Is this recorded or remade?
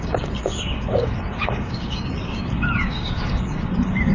remade